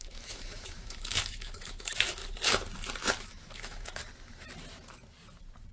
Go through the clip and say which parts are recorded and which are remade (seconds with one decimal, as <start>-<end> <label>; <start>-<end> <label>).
0.0-2.2 remade; 2.2-3.2 recorded; 3.2-4.0 remade; 4.0-5.7 recorded